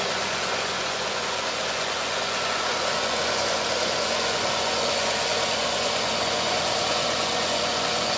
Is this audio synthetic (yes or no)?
yes